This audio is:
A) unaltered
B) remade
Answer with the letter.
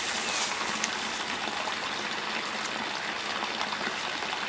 A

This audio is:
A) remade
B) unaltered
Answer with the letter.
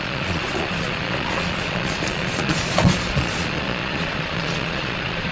A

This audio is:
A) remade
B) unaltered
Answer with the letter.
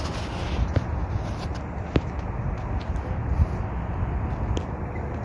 B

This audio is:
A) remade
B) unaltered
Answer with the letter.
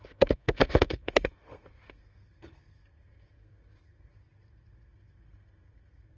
A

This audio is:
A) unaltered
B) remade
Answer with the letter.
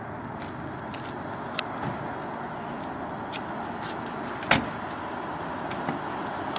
A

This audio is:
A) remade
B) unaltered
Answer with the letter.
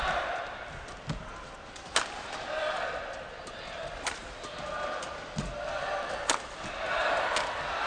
A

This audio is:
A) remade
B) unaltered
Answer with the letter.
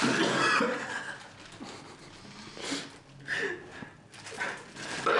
B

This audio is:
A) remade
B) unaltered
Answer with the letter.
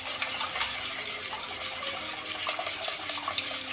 B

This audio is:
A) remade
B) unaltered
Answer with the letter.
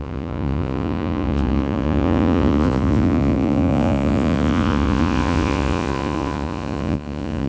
A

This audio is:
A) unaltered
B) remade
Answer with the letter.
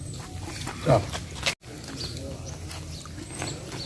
A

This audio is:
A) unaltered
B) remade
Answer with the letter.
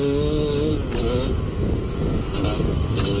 A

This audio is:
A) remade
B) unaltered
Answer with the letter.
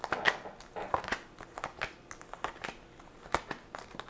B